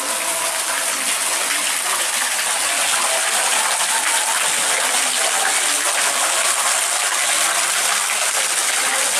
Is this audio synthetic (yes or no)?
no